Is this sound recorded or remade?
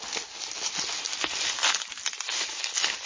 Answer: recorded